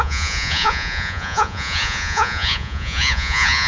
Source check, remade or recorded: remade